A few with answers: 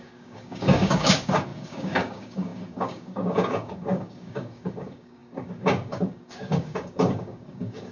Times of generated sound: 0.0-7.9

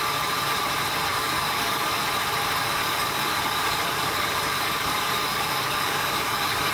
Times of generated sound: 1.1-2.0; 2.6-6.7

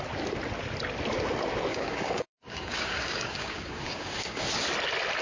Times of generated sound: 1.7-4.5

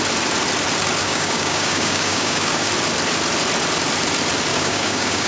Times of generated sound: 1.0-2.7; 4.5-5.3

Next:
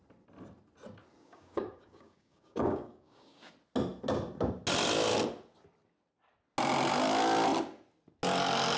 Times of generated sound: 1.2-3.5

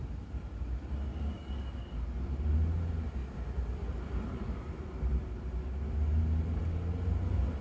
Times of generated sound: 1.1-2.0

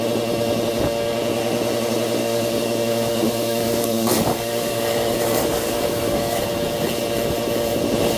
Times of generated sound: 2.2-6.4

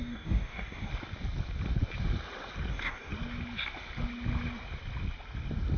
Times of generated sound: 0.0-0.9; 2.7-3.1